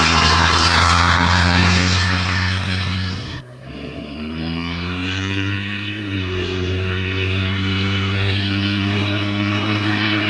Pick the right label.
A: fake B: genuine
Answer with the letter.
A